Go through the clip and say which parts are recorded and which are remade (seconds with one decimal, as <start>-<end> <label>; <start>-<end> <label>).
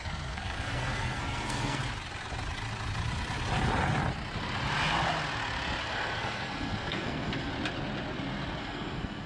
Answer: 0.0-1.8 remade; 1.8-5.8 recorded; 5.8-7.5 remade; 7.5-8.6 recorded; 8.6-9.3 remade